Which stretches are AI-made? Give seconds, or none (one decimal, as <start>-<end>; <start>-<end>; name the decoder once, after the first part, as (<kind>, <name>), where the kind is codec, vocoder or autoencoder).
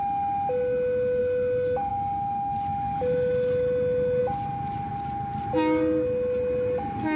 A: none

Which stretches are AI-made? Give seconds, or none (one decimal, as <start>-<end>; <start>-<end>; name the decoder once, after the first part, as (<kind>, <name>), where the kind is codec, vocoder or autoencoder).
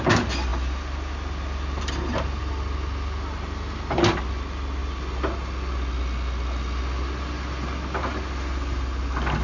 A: none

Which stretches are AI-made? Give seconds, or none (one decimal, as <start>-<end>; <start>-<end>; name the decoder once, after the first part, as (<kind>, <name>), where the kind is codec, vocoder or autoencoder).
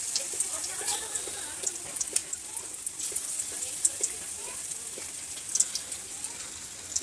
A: none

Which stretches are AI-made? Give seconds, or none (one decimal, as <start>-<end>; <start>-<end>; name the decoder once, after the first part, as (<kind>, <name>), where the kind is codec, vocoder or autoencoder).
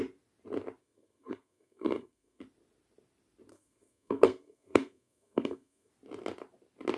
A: 0.8-2.4 (codec, SNAC); 3.5-5.9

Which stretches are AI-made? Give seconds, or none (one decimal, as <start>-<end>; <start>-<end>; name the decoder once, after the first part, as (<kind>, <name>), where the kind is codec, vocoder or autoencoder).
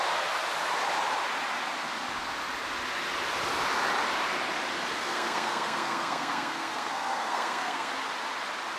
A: 4.9-7.9 (codec, SNAC)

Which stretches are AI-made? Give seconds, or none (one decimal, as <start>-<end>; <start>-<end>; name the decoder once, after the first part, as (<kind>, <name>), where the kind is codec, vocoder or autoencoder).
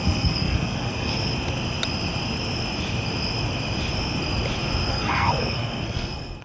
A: 0.0-1.1 (codec, SNAC); 4.9-6.4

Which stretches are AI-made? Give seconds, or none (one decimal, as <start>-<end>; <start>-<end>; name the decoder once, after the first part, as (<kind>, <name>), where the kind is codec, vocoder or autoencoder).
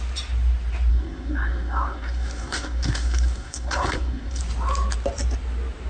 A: 0.9-4.4 (codec, SNAC)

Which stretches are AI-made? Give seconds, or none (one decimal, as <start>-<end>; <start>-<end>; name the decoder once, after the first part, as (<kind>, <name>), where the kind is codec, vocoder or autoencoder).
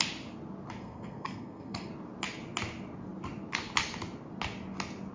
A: 0.8-1.9 (codec, SNAC)